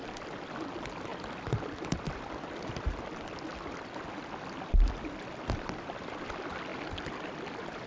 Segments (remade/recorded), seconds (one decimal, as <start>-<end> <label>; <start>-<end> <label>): 0.0-7.9 recorded